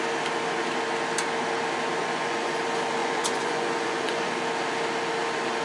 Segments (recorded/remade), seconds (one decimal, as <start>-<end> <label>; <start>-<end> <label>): 0.0-2.0 recorded; 2.0-2.6 remade; 2.6-3.0 recorded; 3.0-4.3 remade; 4.3-5.6 recorded